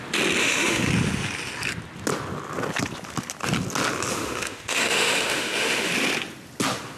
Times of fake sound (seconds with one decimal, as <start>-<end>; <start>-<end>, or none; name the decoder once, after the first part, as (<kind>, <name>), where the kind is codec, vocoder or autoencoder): 0.4-0.9 (autoencoder, DAC-VAE); 4.1-5.9